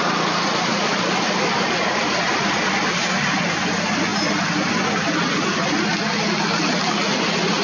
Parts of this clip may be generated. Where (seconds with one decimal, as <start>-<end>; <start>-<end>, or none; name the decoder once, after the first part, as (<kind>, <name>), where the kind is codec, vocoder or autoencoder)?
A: none